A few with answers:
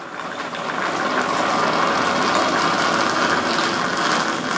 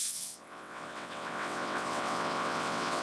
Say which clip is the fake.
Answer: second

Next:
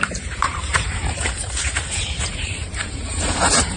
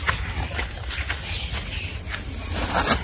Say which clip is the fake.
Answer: first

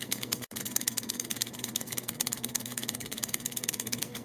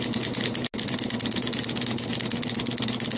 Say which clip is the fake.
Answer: first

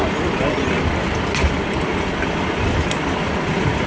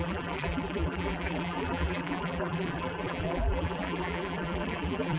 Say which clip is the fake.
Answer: second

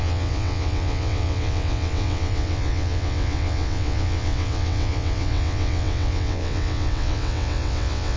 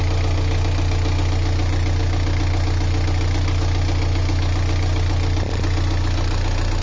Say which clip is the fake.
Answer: first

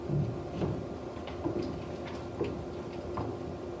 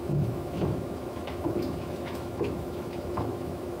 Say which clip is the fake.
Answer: second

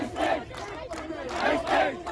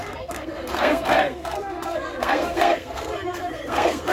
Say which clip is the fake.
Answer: second